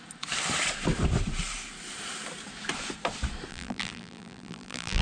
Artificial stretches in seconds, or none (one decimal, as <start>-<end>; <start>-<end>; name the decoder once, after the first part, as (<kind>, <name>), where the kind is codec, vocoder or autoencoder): 3.5-5.0 (vocoder, BigVGAN v2)